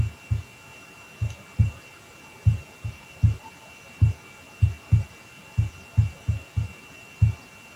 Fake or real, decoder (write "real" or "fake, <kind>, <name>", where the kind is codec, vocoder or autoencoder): real